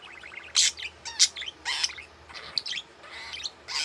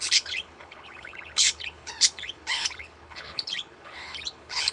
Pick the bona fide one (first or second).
first